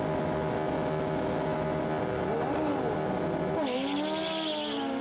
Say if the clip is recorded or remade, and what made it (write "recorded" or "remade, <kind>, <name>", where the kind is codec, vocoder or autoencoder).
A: recorded